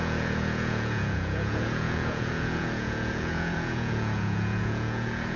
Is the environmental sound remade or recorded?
remade